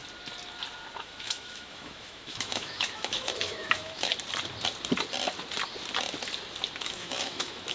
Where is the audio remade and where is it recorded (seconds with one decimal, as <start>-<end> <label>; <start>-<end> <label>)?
0.0-1.0 recorded; 1.0-4.1 remade; 4.1-6.8 recorded; 6.8-7.7 remade